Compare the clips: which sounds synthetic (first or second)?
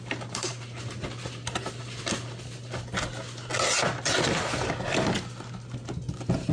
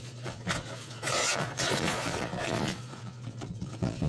second